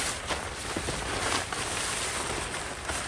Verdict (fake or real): real